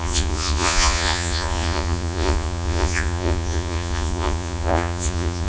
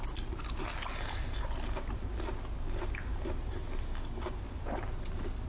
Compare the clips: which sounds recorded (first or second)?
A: second